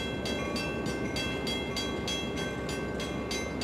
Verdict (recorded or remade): recorded